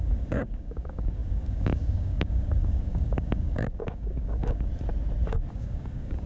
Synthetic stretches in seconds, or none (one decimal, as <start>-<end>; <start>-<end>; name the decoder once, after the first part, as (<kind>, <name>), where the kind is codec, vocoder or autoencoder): 0.0-4.7 (codec, DAC); 5.5-6.3